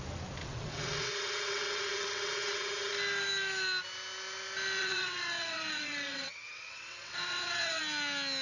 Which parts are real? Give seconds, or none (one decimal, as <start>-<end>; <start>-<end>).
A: 0.0-0.4; 2.9-4.8; 7.8-8.4